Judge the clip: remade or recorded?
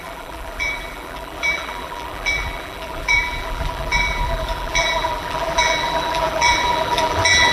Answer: remade